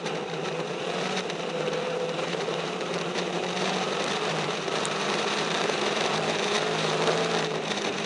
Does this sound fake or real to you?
fake